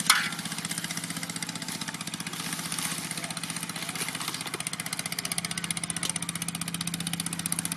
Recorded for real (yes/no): yes